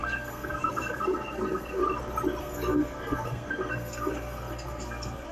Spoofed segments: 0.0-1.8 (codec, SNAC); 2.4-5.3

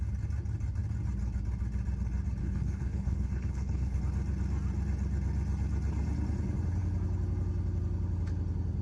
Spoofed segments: 2.4-4.0 (codec, HILCodec)

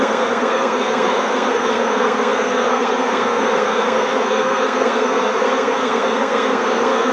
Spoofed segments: 0.0-7.1 (codec, SNAC)

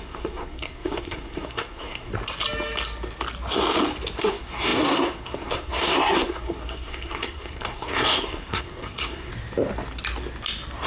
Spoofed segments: 0.0-2.1 (codec, SNAC); 4.2-9.3

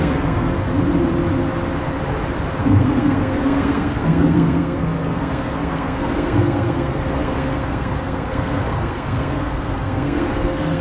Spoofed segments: 0.0-0.5 (codec, SNAC); 2.6-10.8

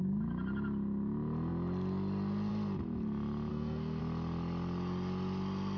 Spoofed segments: 3.5-4.0 (codec, SNAC)

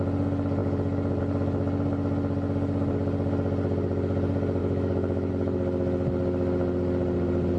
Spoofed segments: 4.6-5.3 (autoencoder, DAC-VAE)